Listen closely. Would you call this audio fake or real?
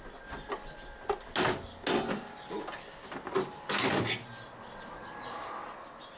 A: real